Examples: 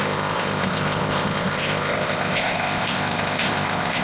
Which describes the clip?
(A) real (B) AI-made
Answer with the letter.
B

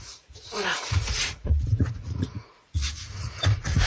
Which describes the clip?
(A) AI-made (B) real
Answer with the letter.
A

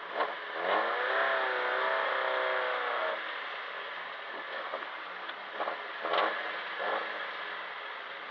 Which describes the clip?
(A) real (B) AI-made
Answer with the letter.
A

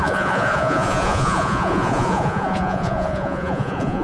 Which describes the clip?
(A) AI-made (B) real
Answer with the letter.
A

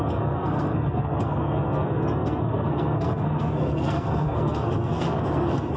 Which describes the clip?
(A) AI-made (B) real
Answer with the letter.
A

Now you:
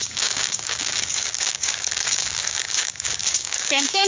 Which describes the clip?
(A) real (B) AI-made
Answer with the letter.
B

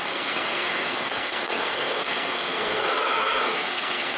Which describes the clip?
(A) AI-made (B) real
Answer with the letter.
A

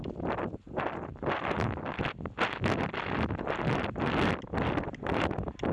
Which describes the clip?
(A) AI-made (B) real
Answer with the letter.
B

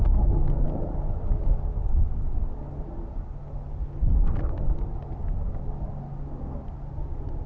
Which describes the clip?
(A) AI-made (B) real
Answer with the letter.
B